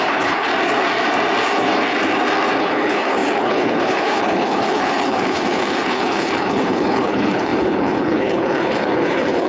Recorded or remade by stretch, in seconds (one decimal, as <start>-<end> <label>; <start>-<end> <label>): 0.0-0.5 remade; 0.5-2.6 recorded; 2.6-9.5 remade